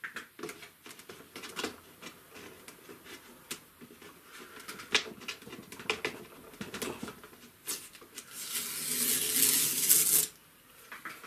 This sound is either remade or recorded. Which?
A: recorded